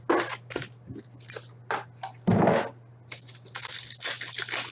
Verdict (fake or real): real